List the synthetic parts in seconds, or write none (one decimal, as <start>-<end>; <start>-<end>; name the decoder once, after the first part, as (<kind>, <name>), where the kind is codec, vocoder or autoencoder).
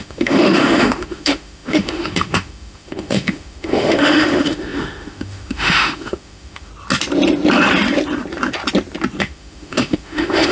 0.0-6.7 (autoencoder, DAC-VAE); 9.2-10.5